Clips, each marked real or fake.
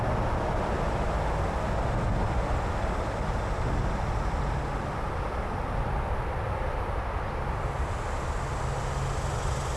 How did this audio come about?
real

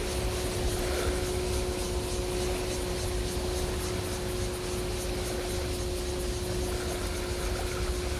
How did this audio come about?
real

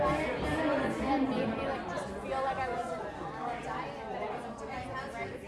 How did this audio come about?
real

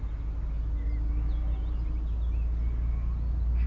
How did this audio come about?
real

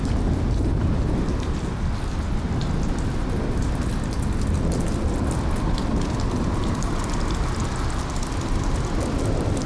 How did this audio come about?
real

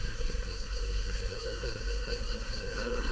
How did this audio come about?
fake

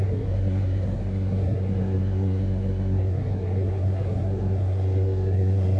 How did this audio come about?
fake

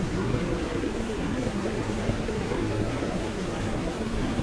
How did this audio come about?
fake